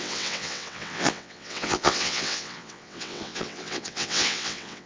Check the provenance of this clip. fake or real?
fake